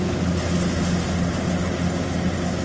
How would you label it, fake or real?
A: real